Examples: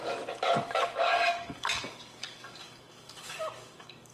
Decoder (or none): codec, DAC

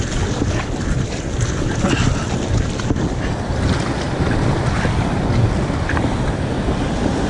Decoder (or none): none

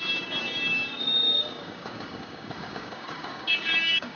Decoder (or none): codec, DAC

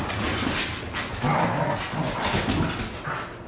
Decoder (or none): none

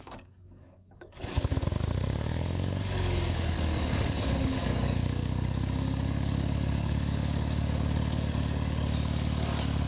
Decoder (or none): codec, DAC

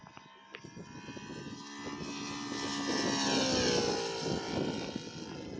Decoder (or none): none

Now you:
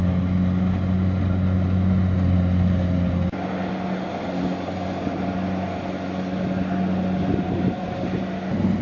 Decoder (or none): none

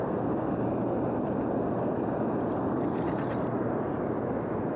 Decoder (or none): none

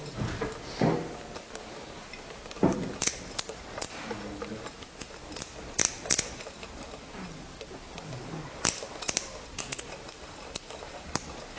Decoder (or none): none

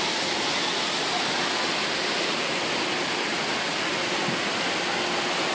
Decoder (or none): none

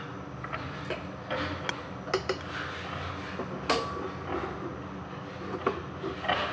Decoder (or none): none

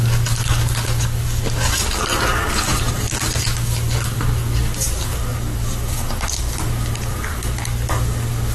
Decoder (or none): codec, DAC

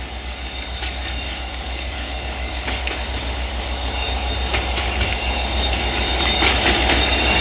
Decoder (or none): codec, DAC